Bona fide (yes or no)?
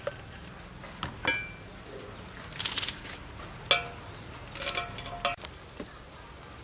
yes